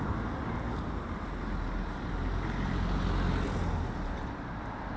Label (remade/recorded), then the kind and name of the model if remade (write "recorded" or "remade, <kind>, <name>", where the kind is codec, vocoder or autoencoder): recorded